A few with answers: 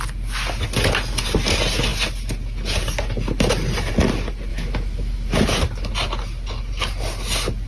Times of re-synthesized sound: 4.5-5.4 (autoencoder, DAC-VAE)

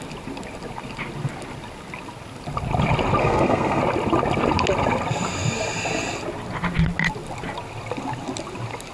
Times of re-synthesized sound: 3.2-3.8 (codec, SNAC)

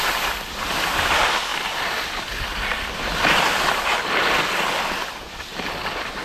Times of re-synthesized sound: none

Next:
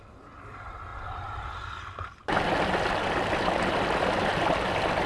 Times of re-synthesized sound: none

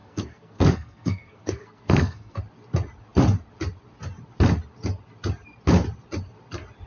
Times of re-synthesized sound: 0.0-2.4 (codec, SNAC)